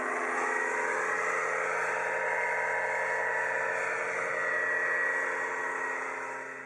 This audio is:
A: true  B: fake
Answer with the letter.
A